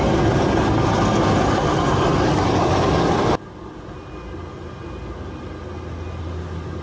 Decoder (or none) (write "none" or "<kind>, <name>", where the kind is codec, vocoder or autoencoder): none